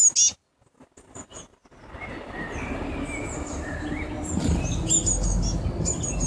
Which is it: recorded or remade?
recorded